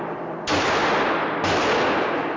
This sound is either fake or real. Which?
real